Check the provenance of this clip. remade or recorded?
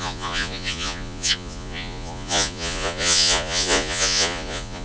remade